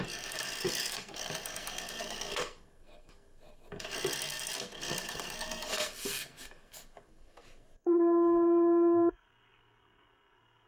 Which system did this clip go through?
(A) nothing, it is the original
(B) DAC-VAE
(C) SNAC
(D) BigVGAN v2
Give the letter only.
C